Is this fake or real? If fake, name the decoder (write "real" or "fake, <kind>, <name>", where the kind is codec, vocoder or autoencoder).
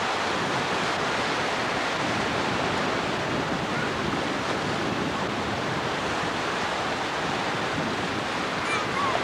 real